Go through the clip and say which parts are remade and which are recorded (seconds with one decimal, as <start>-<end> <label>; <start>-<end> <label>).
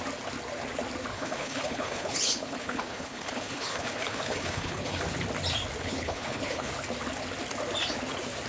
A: 0.0-1.1 recorded; 1.1-5.0 remade; 5.0-5.8 recorded; 5.8-6.7 remade; 6.7-8.5 recorded